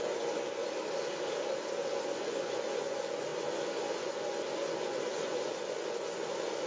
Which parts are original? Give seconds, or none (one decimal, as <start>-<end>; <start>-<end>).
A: 0.6-1.8

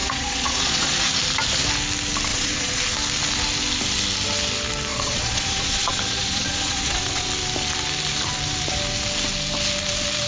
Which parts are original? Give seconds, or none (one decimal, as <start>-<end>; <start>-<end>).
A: 1.1-2.3; 2.8-4.9; 7.3-10.3

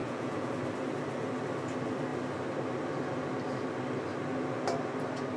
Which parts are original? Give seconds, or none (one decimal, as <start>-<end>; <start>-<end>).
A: 0.5-5.4

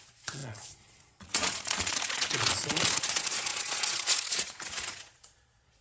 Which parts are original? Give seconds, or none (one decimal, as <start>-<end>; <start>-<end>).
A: none

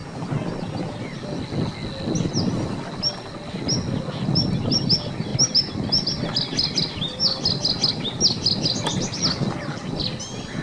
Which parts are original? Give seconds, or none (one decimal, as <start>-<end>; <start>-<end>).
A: 0.0-10.6

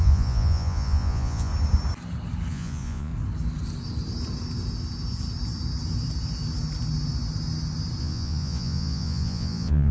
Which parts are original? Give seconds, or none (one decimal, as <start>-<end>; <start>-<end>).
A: 1.5-2.5; 3.1-8.0